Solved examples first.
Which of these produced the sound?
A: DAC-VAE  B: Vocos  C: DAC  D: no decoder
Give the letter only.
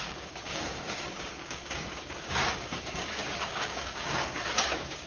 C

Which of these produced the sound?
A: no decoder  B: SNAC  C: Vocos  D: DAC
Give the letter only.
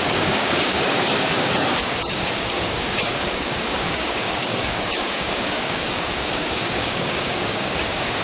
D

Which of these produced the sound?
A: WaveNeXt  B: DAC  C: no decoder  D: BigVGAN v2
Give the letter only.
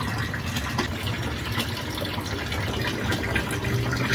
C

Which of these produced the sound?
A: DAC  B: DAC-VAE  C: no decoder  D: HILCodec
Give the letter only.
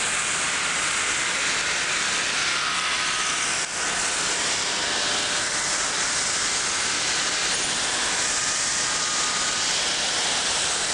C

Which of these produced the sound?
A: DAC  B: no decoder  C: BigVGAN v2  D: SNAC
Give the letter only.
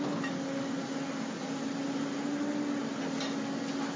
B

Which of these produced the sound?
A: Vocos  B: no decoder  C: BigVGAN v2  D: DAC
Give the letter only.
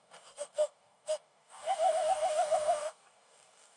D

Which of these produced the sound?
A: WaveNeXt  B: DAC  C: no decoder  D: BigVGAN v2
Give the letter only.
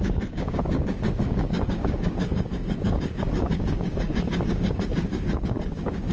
B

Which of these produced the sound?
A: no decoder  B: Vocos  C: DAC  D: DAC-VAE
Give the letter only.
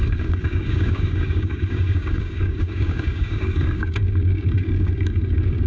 C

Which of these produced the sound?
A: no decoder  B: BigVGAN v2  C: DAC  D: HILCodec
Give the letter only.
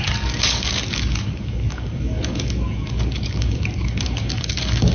C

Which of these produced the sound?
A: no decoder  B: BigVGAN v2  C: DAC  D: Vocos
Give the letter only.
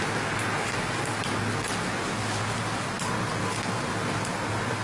A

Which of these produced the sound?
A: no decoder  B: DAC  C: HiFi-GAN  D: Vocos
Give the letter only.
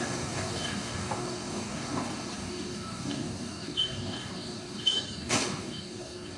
B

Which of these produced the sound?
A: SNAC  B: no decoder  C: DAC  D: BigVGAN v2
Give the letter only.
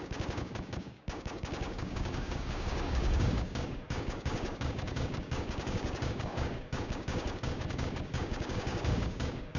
C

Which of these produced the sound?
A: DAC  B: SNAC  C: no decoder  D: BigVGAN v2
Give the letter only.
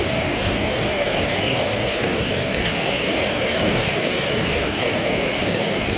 A